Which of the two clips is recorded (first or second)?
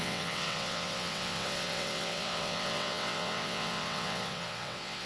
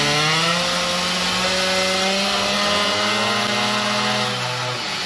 second